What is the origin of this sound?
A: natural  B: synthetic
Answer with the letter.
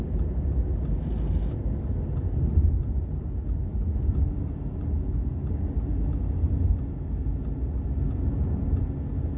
A